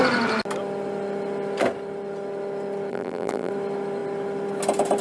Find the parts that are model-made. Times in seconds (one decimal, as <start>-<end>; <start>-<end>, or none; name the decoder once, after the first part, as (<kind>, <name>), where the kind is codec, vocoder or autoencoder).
2.9-3.5 (vocoder, BigVGAN v2)